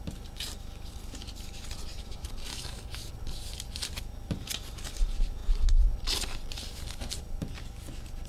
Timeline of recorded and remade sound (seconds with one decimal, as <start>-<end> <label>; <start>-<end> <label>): 0.0-2.5 recorded; 2.5-3.1 remade; 3.1-8.3 recorded